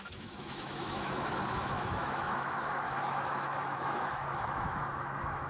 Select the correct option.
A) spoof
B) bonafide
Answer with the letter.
A